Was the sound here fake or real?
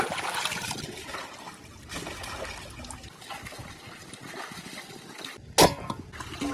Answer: real